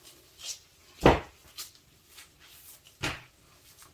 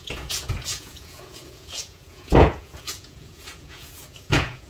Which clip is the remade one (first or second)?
second